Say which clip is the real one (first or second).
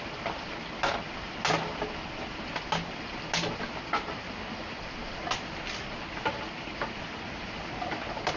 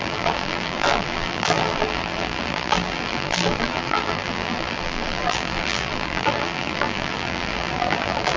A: first